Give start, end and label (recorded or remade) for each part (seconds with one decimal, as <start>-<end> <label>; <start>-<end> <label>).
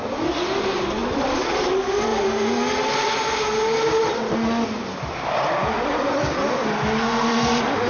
0.0-7.9 recorded